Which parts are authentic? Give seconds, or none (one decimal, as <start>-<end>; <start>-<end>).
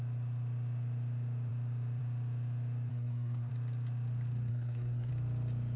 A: 0.0-2.9; 3.5-4.5; 5.1-5.8